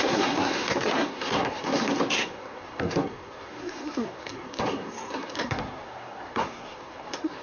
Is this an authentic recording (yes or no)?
no